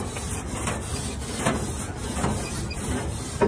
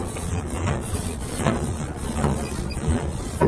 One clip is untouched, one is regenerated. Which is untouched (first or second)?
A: first